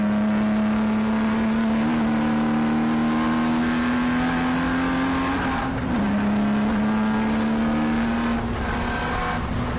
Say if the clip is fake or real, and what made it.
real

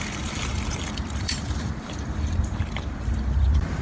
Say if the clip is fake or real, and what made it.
fake, vocoder, BigVGAN v2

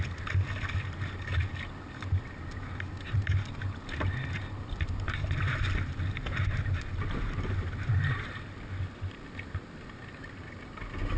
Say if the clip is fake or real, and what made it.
real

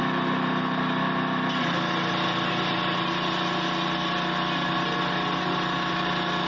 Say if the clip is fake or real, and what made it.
real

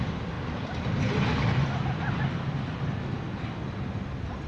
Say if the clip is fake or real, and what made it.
real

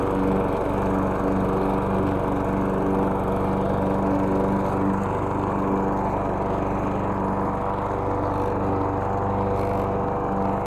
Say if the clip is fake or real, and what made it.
real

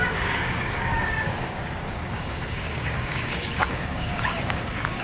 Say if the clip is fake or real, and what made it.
fake, codec, DAC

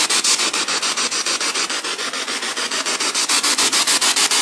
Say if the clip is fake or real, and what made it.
fake, vocoder, Vocos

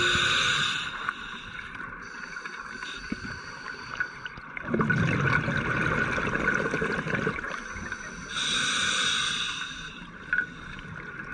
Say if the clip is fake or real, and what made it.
real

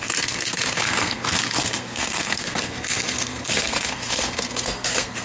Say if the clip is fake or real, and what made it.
fake, codec, SNAC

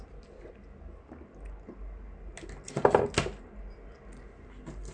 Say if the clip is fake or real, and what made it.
real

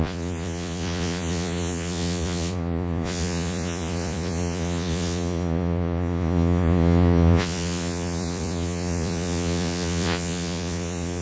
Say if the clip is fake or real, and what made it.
fake, vocoder, Vocos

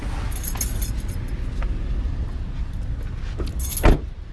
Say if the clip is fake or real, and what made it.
real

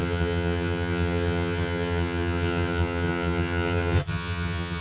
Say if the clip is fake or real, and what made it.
fake, vocoder, HiFi-GAN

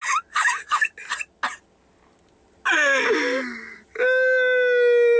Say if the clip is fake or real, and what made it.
real